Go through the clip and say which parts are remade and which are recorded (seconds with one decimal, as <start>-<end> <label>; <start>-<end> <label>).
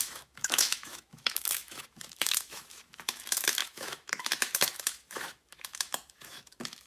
0.0-6.9 remade